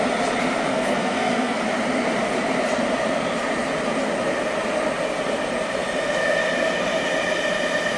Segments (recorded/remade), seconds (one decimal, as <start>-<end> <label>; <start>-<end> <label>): 0.0-0.7 recorded; 0.7-1.6 remade; 1.6-8.0 recorded

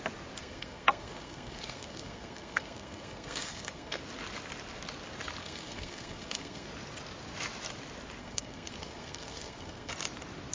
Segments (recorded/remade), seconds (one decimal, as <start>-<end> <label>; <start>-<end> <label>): 0.0-0.4 recorded; 0.4-4.0 remade; 4.0-5.4 recorded; 5.4-6.7 remade; 6.7-8.2 recorded; 8.2-9.9 remade; 9.9-10.5 recorded